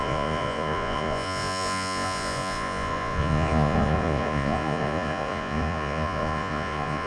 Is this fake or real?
fake